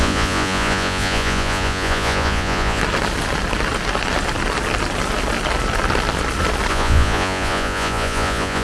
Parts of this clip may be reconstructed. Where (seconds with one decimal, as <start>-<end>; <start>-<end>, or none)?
0.0-2.8; 6.7-8.6